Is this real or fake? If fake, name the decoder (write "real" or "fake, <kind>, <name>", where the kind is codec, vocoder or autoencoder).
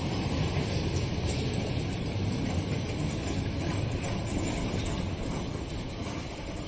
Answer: real